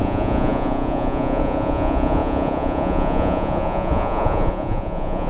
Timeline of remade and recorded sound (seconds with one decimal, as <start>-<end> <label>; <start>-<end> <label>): 0.0-5.3 remade